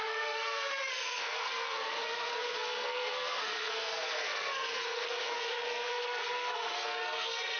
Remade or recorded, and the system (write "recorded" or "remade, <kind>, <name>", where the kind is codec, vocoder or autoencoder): remade, codec, SNAC